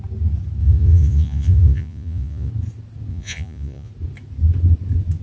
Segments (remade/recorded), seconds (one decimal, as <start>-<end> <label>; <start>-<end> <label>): 0.0-0.6 recorded; 0.6-2.5 remade; 2.5-3.1 recorded; 3.1-3.9 remade; 3.9-5.2 recorded